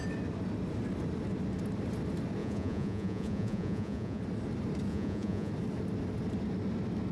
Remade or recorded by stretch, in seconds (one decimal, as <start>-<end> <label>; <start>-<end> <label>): 0.0-2.4 recorded; 2.4-4.2 remade; 4.2-4.9 recorded; 4.9-5.5 remade; 5.5-7.1 recorded